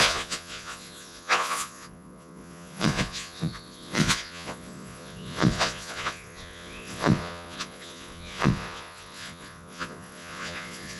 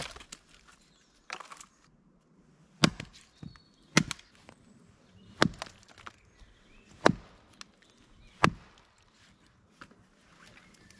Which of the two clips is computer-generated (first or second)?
first